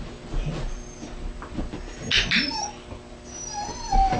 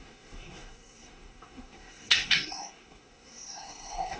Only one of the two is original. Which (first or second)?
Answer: first